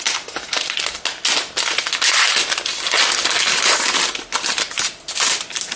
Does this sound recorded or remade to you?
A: recorded